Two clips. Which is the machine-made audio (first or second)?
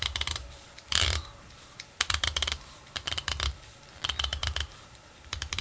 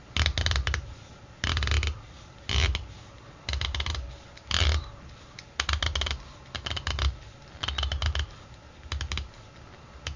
first